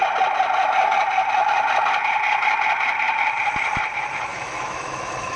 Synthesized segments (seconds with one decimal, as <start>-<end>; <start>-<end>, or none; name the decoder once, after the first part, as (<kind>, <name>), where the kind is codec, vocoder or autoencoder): 4.3-5.4 (autoencoder, DAC-VAE)